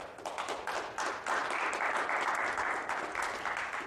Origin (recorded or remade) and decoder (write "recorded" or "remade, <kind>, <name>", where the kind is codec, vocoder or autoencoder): remade, vocoder, BigVGAN v2